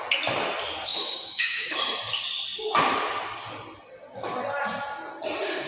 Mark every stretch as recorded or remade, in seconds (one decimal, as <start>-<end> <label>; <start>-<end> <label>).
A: 0.0-0.9 recorded; 0.9-1.8 remade; 1.8-5.7 recorded